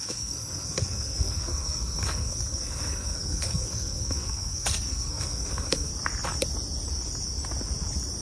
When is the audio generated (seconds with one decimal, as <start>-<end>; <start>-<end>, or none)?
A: 0.0-5.9